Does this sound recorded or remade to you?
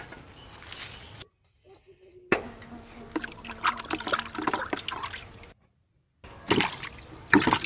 recorded